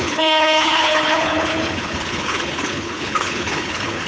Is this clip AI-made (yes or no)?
yes